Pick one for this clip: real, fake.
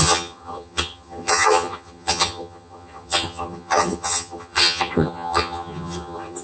fake